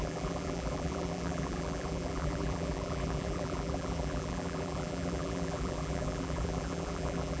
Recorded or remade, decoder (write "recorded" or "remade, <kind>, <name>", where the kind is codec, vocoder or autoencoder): remade, vocoder, BigVGAN v2